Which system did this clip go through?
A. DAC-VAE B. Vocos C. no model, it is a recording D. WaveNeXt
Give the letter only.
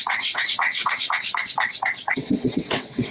D